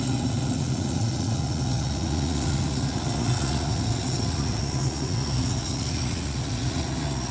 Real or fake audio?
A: fake